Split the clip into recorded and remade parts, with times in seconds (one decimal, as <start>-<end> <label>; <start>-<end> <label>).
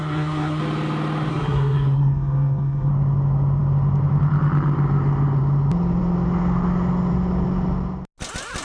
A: 0.0-0.6 remade; 0.6-1.3 recorded; 1.3-2.9 remade; 2.9-8.6 recorded